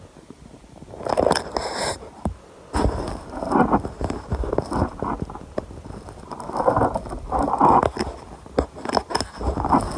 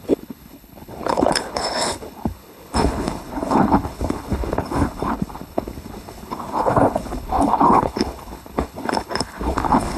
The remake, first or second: second